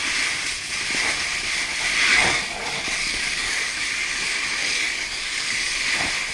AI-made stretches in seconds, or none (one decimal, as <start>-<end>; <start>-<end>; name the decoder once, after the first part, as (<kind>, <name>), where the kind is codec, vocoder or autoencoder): 2.1-5.8 (codec, DAC)